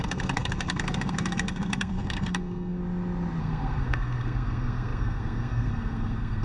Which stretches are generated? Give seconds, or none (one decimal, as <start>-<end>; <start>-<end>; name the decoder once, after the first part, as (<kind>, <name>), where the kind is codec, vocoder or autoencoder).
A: 0.0-2.8 (codec, SNAC); 3.4-6.4